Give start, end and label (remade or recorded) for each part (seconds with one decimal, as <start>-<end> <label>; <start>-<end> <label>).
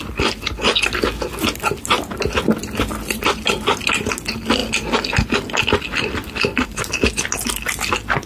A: 0.0-2.6 recorded; 2.6-4.1 remade; 4.1-8.3 recorded